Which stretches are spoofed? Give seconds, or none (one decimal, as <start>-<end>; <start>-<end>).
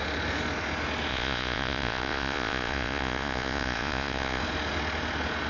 1.1-4.4